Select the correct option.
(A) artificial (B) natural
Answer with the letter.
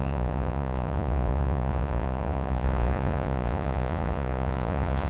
A